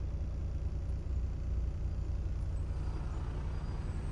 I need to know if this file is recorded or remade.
recorded